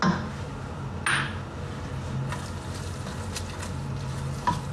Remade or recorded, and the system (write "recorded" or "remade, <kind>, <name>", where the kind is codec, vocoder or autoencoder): recorded